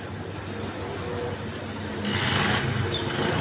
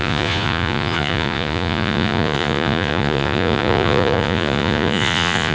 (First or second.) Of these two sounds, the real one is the first